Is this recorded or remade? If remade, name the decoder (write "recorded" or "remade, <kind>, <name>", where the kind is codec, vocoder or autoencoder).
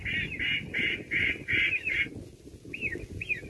recorded